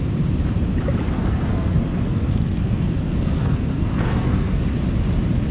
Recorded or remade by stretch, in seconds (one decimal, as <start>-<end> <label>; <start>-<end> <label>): 0.0-1.3 recorded; 1.3-4.6 remade; 4.6-5.5 recorded